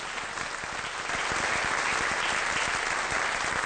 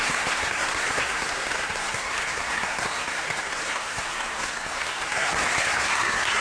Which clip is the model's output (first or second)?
second